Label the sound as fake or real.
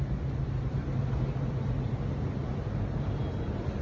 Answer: real